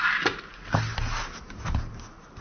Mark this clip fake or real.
real